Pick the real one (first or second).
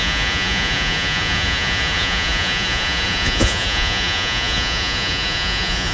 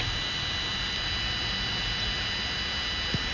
second